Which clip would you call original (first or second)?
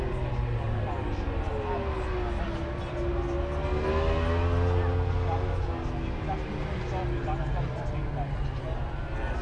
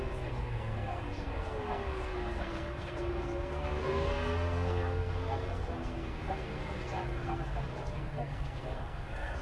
first